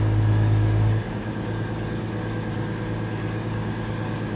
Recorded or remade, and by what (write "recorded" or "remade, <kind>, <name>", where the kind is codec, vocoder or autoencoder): remade, codec, DAC